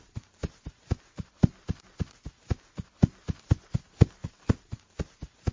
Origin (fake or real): real